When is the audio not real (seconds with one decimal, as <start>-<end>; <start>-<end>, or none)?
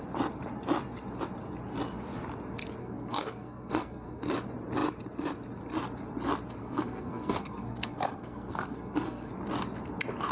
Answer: 2.8-4.2; 6.6-9.3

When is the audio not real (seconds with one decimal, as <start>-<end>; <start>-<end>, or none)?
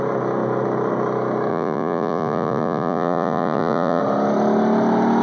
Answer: 1.5-4.0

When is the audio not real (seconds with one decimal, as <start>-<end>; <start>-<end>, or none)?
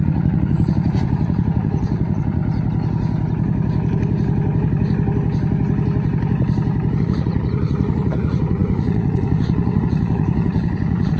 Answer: 0.0-2.4; 7.0-11.2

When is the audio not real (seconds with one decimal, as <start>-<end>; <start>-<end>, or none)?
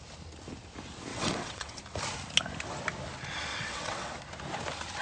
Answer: 1.1-1.8; 3.5-4.1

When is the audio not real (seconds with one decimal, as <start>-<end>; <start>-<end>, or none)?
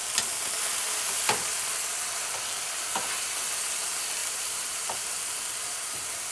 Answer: 4.2-5.1